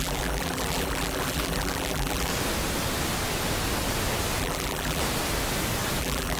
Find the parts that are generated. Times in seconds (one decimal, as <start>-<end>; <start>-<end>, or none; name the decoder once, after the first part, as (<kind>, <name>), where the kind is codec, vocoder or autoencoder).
0.0-2.3 (vocoder, BigVGAN v2); 4.4-5.0; 6.0-6.4